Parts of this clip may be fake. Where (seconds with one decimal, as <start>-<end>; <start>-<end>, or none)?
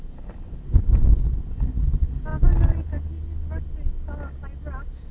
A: none